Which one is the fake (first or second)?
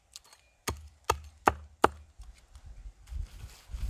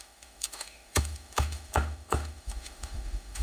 second